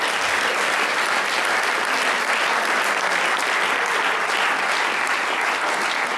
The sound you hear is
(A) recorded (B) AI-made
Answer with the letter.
A